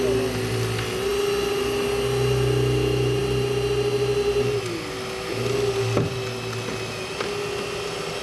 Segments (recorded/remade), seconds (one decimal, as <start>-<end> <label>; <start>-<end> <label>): 0.0-8.2 recorded

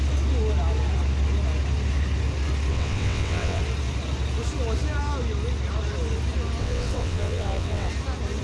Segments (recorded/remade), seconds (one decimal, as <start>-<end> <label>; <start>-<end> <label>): 0.0-2.7 recorded; 2.7-3.6 remade; 3.6-6.6 recorded; 6.6-7.9 remade; 7.9-8.4 recorded

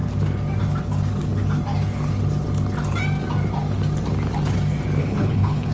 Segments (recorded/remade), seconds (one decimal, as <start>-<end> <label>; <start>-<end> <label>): 0.0-5.0 recorded; 5.0-5.7 remade